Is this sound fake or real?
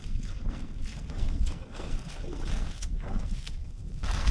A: fake